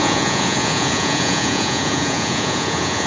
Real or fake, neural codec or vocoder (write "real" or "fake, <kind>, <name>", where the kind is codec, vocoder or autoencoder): fake, vocoder, Vocos